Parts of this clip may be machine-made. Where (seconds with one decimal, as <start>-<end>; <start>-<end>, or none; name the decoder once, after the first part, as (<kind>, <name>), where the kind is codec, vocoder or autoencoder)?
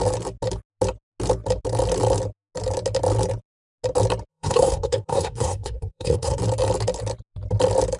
4.3-6.4 (codec, SNAC)